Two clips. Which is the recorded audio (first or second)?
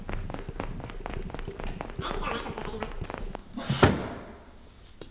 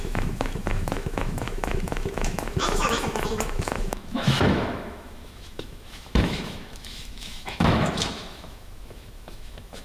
first